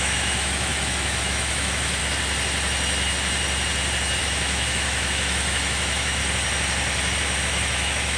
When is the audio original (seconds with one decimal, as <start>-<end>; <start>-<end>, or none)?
2.0-4.2; 6.2-7.4